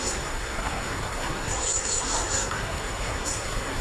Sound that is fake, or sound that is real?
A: fake